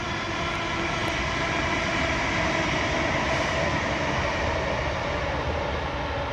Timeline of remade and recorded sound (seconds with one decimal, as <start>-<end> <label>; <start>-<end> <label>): 0.0-6.3 recorded